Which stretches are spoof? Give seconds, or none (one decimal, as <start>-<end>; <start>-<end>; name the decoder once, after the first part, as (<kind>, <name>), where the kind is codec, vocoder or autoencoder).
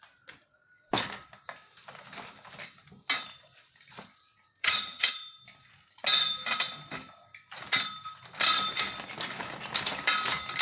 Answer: 4.6-5.1 (vocoder, HiFi-GAN)